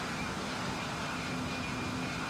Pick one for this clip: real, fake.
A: real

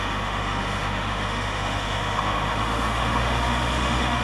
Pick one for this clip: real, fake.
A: fake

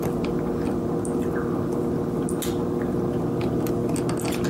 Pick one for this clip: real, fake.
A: real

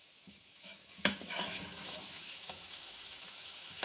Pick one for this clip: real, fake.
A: fake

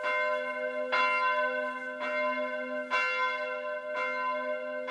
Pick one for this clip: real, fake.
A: real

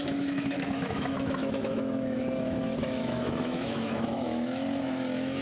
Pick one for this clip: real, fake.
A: fake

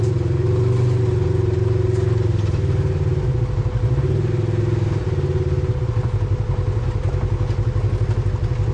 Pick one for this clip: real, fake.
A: real